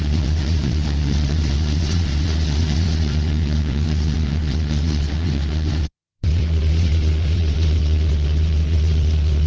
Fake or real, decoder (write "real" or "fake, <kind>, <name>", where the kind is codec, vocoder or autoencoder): fake, vocoder, WaveNeXt